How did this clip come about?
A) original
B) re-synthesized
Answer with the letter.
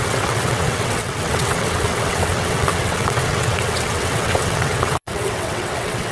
B